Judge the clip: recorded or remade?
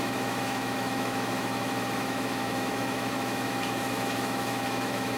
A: remade